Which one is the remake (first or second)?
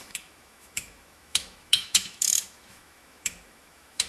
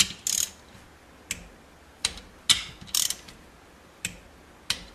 first